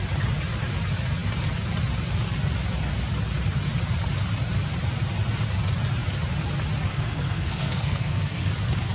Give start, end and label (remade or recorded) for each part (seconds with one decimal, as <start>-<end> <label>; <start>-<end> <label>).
0.0-6.9 recorded; 6.9-8.5 remade; 8.5-8.9 recorded

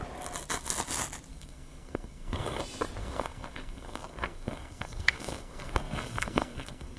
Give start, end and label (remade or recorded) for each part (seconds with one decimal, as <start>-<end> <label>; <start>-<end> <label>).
0.0-1.3 recorded; 1.3-2.6 remade; 2.6-3.0 recorded; 3.0-7.0 remade

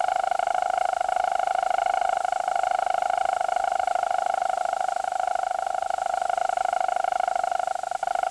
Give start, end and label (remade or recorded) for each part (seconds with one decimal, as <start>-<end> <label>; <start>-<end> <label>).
0.0-8.3 recorded